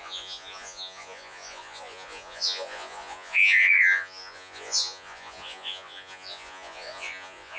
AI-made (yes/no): yes